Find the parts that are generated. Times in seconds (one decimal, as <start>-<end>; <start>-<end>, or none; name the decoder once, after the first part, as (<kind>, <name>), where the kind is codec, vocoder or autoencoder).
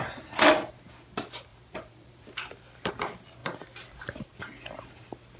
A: 1.5-2.9 (vocoder, BigVGAN v2); 3.4-4.4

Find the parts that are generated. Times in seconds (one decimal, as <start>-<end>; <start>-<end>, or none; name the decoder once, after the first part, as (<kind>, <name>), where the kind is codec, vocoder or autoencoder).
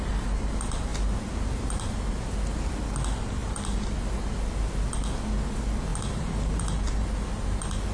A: 0.0-0.9 (vocoder, BigVGAN v2); 2.1-5.9; 7.0-7.9